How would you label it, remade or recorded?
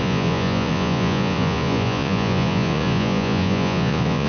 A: remade